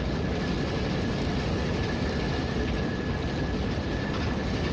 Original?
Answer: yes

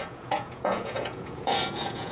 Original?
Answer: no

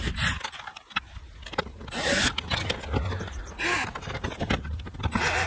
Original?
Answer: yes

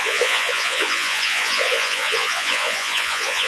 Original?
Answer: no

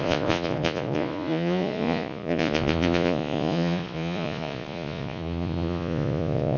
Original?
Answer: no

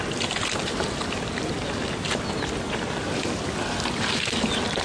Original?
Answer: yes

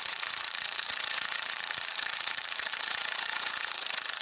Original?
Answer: no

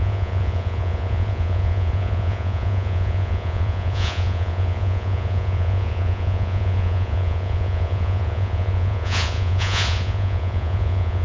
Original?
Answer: no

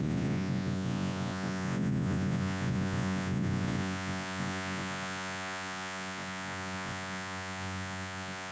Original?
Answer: no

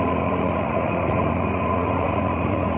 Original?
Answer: no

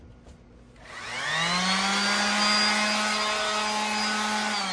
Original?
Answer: yes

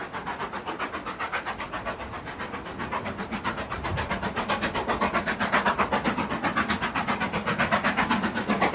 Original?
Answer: yes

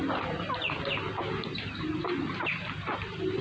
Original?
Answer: yes